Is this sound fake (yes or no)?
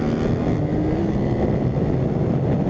no